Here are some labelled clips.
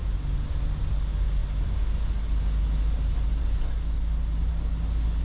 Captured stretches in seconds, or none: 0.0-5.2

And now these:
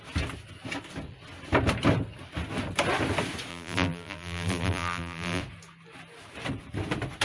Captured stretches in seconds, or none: 0.0-3.5; 5.4-7.2

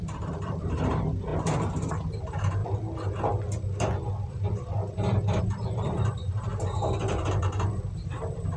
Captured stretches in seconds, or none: 2.6-5.4; 6.5-7.3

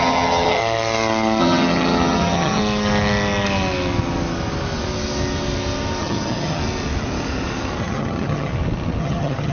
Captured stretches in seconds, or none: 0.6-1.4; 2.6-6.0; 6.6-7.8; 8.5-9.0

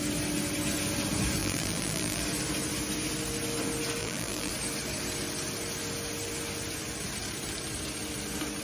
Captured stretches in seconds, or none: 0.0-1.4; 2.2-4.0; 4.5-8.6

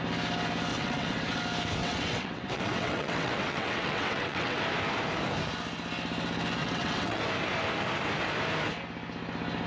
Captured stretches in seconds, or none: 0.0-0.7; 1.4-1.8; 4.6-6.6; 7.2-9.7

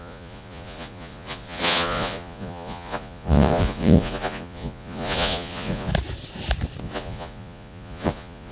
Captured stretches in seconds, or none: 5.9-6.8